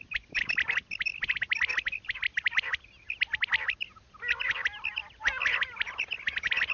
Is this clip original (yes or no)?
yes